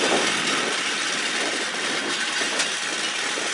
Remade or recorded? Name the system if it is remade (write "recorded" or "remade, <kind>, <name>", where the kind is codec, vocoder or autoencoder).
recorded